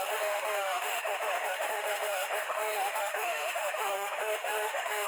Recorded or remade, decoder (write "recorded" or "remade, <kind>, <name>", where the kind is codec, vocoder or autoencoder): remade, autoencoder, DAC-VAE